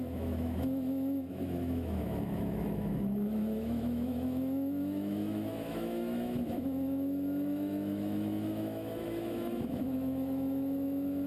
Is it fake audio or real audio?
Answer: fake